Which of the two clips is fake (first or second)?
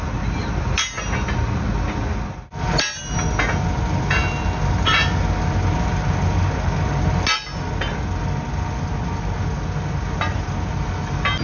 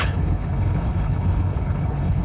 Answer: second